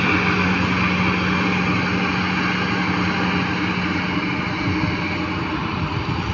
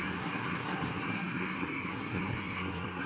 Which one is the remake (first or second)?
second